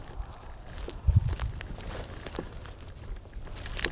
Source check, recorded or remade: recorded